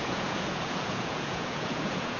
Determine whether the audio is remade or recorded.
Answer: remade